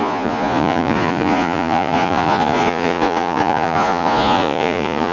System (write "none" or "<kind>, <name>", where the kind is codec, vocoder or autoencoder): vocoder, Vocos